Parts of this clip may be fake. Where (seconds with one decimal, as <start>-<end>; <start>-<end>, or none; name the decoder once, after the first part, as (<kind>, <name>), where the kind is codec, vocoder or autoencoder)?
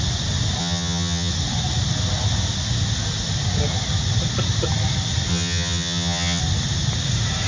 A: 0.6-1.3 (vocoder, HiFi-GAN); 5.3-6.4